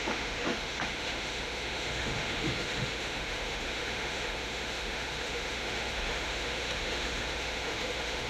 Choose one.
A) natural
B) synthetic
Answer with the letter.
B